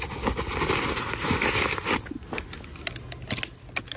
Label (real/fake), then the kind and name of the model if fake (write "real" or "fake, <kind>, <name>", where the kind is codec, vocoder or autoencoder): real